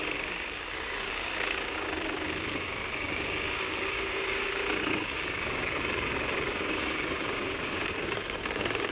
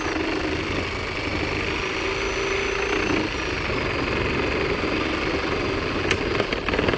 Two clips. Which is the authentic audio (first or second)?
second